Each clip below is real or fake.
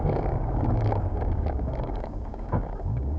fake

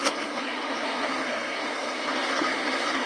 fake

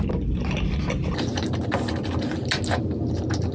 real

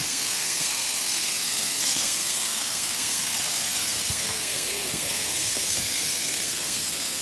fake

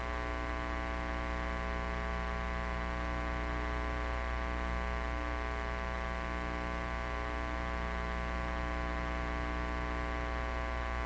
real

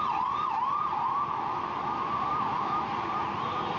real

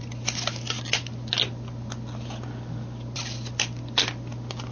real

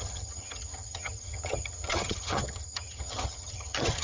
fake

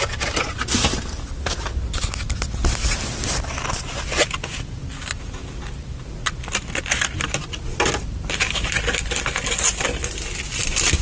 real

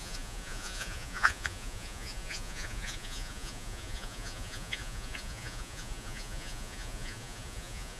fake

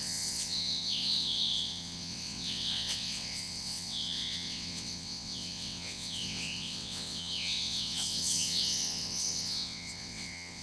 fake